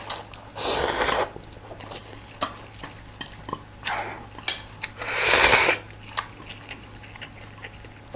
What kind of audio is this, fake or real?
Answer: real